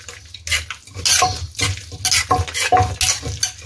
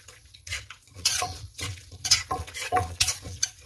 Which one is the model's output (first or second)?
second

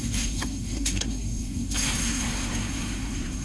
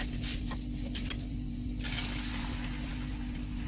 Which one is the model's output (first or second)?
first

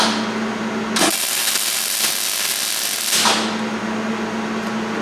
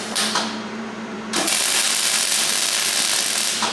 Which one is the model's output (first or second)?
second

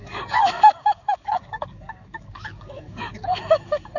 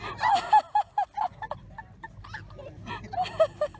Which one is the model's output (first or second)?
first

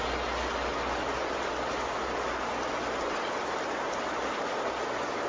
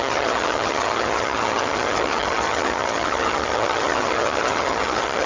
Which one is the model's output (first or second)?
second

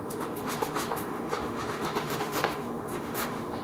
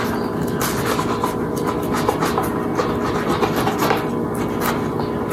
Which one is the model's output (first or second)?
first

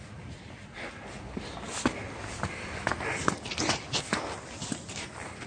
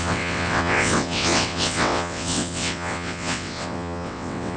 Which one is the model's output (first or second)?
second